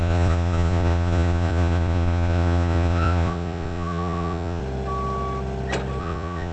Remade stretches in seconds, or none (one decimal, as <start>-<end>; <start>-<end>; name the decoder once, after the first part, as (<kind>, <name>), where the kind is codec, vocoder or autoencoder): 0.0-4.6 (vocoder, Vocos); 6.0-6.5